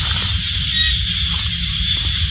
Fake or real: real